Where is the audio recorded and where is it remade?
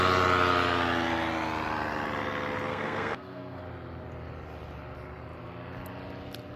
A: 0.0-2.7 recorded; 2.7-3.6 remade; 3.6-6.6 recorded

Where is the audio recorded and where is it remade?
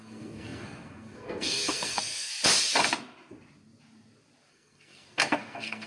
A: 0.0-2.3 remade; 2.3-4.5 recorded; 4.5-5.9 remade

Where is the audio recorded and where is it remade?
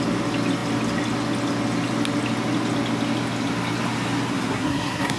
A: 0.0-4.3 recorded; 4.3-5.2 remade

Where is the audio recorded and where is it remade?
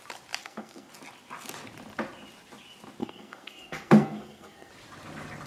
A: 0.0-0.4 recorded; 0.4-0.9 remade; 0.9-3.0 recorded; 3.0-4.7 remade; 4.7-5.5 recorded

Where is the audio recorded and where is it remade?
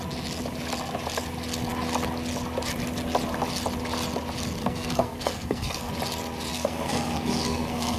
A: 0.0-4.6 recorded; 4.6-5.9 remade; 5.9-6.5 recorded; 6.5-8.0 remade